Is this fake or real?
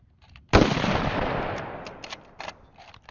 fake